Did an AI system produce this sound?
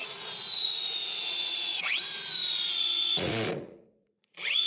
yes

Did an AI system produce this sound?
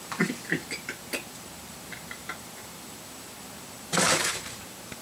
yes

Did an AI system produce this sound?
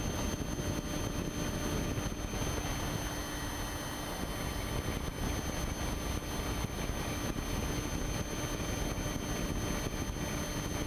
no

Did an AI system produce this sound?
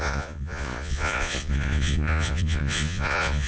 yes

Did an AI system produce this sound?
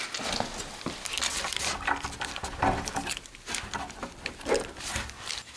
no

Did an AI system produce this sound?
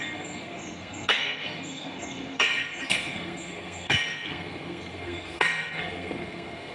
yes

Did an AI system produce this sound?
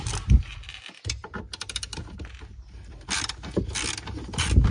no